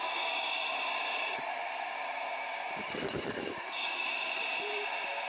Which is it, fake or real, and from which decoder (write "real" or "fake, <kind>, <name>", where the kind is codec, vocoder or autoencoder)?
real